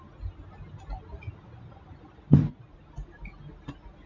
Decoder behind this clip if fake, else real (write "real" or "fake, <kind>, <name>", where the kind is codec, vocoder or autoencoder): real